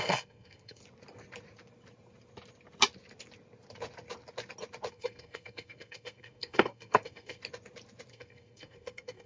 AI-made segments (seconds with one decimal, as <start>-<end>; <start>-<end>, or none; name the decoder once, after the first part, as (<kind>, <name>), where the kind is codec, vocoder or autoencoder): 0.0-0.8 (codec, SNAC); 4.9-7.4; 8.1-9.3